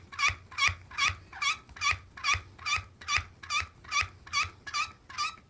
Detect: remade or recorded recorded